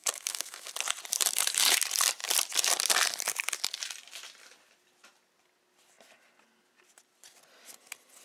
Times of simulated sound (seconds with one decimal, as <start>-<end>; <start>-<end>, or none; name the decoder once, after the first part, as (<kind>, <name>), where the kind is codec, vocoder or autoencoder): 0.0-0.7 (codec, SNAC)

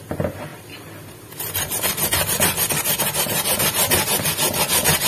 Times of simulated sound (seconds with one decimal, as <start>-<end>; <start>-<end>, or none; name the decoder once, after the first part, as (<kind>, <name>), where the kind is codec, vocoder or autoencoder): none

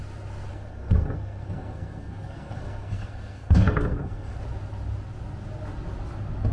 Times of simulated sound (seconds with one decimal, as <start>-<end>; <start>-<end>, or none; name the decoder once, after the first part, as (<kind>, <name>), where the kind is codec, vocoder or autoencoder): 0.5-4.4 (codec, SNAC)

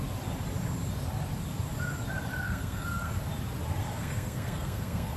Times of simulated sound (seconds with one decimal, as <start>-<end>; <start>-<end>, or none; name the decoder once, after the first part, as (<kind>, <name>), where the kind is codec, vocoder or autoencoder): 2.3-3.1 (codec, SNAC); 3.8-5.2